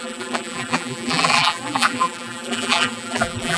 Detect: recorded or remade remade